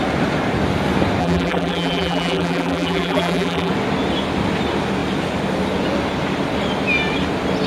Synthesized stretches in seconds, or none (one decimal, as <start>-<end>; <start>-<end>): 1.2-3.7